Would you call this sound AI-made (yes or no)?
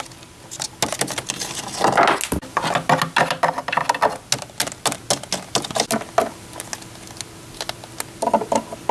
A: no